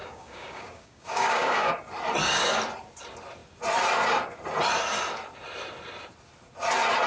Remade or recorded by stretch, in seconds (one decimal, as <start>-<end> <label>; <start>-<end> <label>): 0.0-1.7 remade; 1.7-7.1 recorded